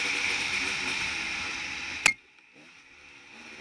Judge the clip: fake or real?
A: real